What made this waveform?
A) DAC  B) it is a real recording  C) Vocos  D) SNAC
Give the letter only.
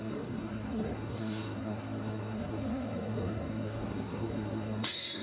D